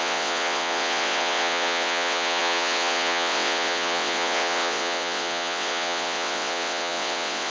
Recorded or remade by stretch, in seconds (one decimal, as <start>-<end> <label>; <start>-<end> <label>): 0.0-7.5 remade

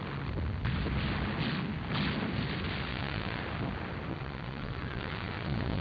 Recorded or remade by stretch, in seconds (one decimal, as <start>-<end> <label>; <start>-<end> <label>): 0.0-2.9 recorded; 2.9-3.4 remade; 3.4-4.1 recorded; 4.1-5.8 remade

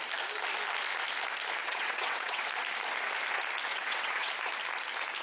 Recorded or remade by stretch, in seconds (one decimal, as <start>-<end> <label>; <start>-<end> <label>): 0.0-1.6 recorded; 1.6-2.4 remade; 2.4-3.7 recorded; 3.7-4.3 remade; 4.3-5.2 recorded

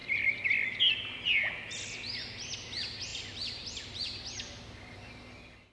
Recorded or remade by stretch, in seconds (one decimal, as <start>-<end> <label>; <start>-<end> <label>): 0.0-5.7 recorded

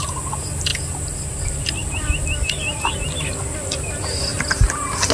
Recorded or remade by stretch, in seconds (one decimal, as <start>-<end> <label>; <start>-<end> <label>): 0.0-5.1 recorded

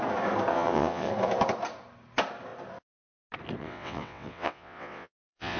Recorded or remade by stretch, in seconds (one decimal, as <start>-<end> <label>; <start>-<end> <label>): 0.0-0.5 recorded; 0.5-1.1 remade; 1.1-3.6 recorded; 3.6-5.6 remade

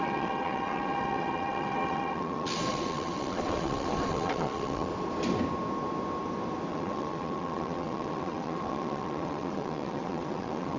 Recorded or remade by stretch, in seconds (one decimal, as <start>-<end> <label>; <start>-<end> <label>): 0.0-4.9 remade; 4.9-6.7 recorded; 6.7-10.8 remade